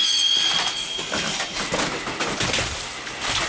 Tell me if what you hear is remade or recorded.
recorded